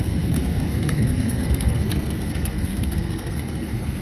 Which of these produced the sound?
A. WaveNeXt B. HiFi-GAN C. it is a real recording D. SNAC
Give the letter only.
D